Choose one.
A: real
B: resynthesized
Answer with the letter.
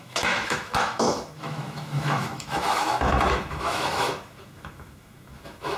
B